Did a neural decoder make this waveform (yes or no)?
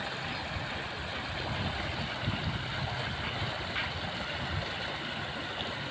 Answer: no